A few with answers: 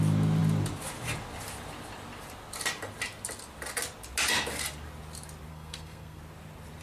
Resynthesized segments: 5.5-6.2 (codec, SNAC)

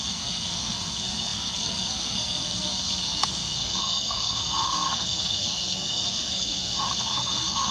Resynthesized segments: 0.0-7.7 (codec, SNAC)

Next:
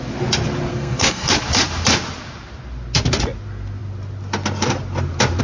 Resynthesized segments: 0.7-1.3 (codec, SNAC)

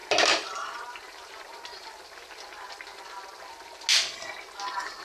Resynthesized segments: none

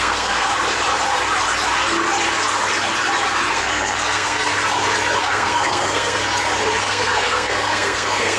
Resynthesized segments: 0.0-0.5 (codec, SNAC); 3.5-4.5; 5.2-6.2; 6.8-8.4